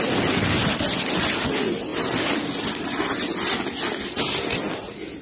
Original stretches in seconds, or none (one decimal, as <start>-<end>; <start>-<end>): 0.0-5.2